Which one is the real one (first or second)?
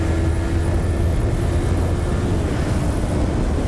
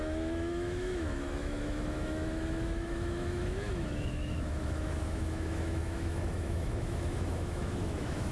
first